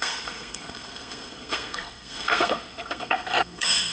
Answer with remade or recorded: remade